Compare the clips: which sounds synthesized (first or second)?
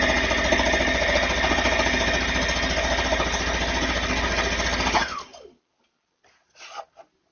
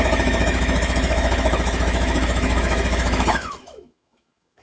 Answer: second